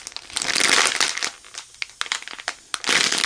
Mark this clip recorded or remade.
recorded